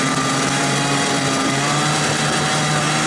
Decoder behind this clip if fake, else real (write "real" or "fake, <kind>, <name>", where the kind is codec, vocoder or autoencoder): real